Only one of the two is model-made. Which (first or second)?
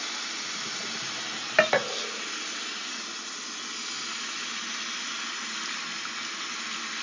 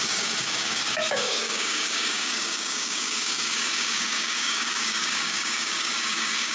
second